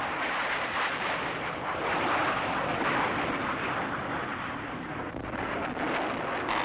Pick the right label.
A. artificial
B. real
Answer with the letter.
B